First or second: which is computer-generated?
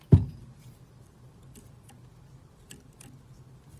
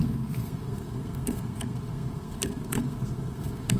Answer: second